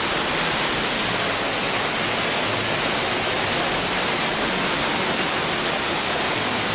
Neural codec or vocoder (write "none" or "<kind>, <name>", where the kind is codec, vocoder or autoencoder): none